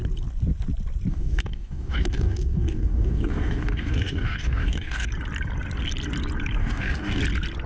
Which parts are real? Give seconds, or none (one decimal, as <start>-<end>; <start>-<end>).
0.0-1.1; 5.1-6.6; 7.2-7.7